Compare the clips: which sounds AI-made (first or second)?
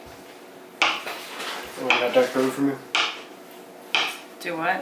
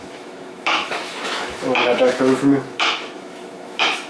second